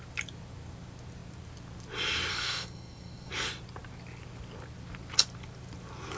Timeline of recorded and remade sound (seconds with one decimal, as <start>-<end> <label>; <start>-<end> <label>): 0.0-2.3 recorded; 2.3-3.3 remade; 3.3-6.2 recorded